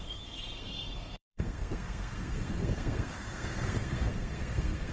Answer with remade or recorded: remade